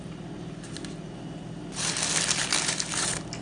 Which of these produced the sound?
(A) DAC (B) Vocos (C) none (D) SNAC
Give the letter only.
C